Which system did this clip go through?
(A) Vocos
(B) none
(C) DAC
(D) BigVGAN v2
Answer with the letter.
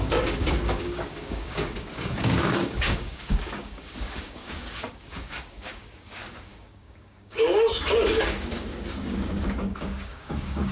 C